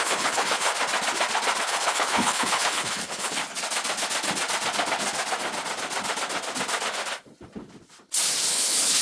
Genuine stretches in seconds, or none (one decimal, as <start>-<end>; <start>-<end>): 0.7-1.6; 3.4-8.5